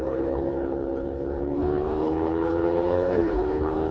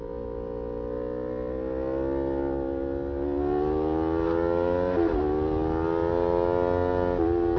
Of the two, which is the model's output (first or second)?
first